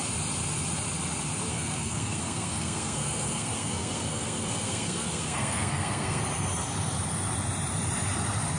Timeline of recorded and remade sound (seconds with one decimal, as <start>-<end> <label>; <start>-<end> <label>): 0.0-1.5 recorded; 1.5-6.2 remade; 6.2-8.6 recorded